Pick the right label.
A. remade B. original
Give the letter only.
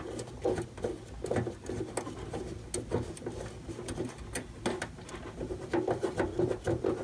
B